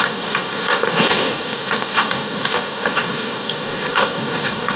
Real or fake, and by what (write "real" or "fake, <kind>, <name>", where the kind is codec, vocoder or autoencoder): fake, codec, DAC